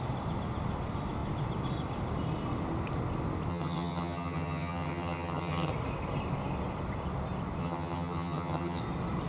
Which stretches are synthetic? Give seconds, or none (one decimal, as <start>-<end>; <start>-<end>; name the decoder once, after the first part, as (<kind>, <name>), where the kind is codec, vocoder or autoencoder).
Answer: 3.5-5.7 (vocoder, HiFi-GAN); 7.6-8.8